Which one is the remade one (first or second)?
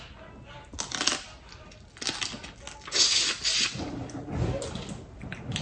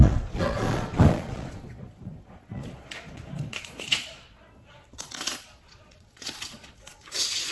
second